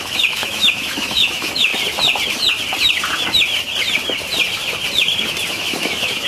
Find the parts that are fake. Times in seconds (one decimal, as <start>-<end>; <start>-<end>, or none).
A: 0.0-1.7; 5.5-6.3